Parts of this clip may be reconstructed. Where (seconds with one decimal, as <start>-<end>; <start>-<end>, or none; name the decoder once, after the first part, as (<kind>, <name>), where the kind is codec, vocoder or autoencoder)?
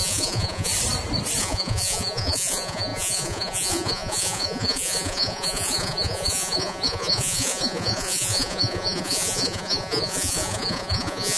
0.0-0.7 (vocoder, Vocos); 1.4-11.4